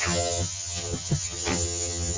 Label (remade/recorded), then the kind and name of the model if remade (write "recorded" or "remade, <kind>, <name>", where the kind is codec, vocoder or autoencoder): remade, vocoder, HiFi-GAN